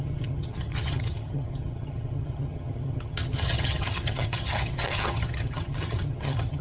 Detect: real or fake fake